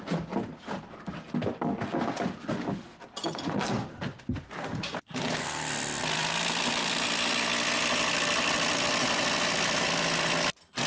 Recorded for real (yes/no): yes